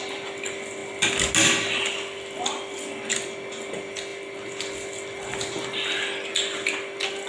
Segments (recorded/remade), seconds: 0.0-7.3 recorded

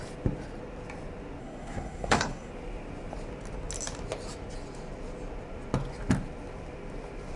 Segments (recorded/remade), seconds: 0.0-1.4 recorded; 1.4-2.5 remade; 2.5-7.4 recorded

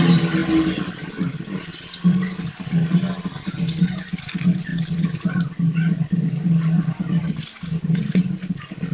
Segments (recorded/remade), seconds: 0.0-0.4 recorded; 0.4-1.8 remade; 1.8-4.7 recorded; 4.7-7.2 remade; 7.2-8.9 recorded

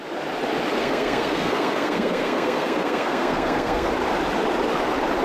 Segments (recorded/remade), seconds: 0.0-0.8 recorded; 0.8-3.9 remade; 3.9-5.2 recorded